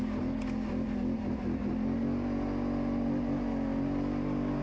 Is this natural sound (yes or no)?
yes